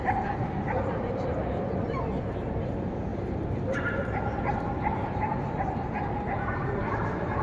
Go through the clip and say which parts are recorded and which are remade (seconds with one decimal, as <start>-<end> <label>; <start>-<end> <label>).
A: 0.0-7.4 recorded